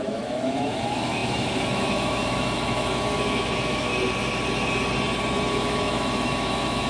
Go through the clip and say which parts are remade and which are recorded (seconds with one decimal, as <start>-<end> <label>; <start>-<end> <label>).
0.0-3.9 remade; 3.9-5.5 recorded; 5.5-6.9 remade